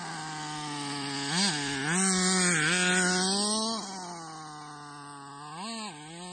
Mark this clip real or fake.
real